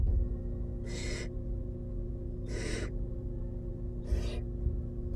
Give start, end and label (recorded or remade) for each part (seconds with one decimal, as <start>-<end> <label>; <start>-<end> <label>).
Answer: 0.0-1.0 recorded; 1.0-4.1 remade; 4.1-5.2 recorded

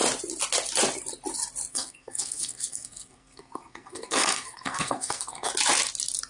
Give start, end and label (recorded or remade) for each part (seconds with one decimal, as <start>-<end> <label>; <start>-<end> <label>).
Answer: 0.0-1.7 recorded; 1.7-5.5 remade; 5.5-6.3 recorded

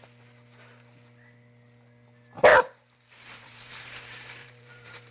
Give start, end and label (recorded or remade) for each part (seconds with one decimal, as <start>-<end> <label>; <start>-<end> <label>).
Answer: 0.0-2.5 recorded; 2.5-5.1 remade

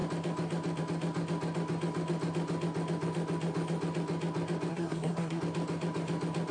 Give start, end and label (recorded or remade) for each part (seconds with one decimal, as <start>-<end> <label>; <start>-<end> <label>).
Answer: 0.0-4.7 recorded; 4.7-5.4 remade; 5.4-6.5 recorded